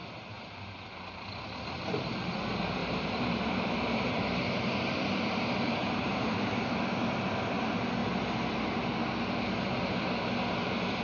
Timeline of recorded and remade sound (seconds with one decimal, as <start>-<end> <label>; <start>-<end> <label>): 0.0-2.8 recorded; 2.8-6.7 remade; 6.7-11.0 recorded